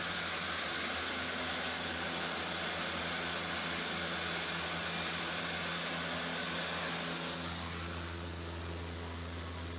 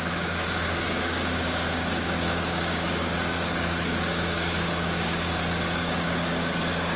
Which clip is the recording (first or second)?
first